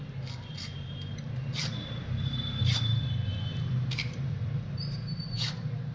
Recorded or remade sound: remade